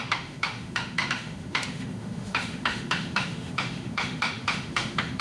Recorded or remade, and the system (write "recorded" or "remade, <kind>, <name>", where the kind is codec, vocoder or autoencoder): remade, autoencoder, DAC-VAE